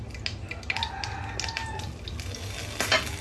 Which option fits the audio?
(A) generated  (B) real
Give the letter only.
B